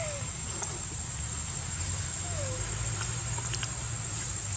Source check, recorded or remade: recorded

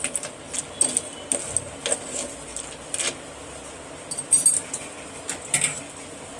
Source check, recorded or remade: recorded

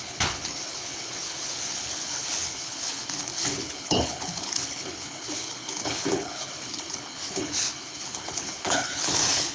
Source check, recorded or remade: remade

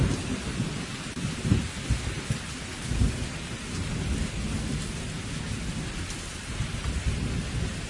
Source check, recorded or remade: recorded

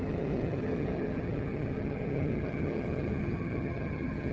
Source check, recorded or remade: remade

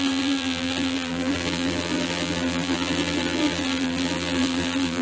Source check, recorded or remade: remade